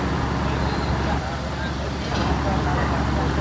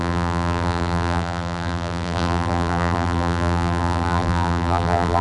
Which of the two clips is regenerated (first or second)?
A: second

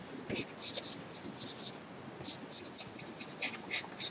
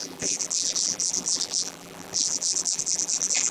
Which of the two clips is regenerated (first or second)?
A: second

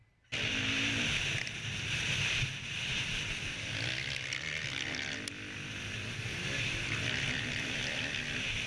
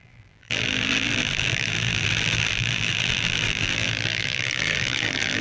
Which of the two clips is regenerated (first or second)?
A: second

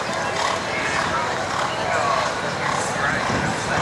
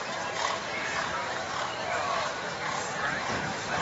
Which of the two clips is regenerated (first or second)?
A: second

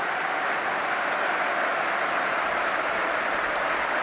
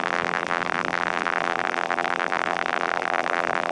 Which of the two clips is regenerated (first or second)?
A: second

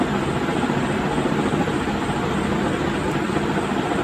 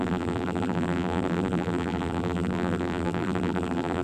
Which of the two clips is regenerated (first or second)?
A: second